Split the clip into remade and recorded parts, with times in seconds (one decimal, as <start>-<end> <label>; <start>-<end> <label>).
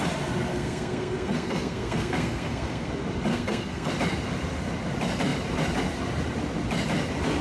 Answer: 0.0-0.5 recorded; 0.5-2.9 remade; 2.9-3.3 recorded; 3.3-3.9 remade; 3.9-7.4 recorded